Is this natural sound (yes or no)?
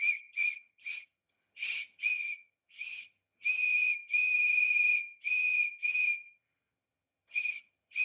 no